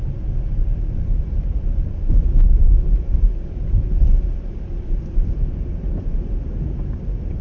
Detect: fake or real fake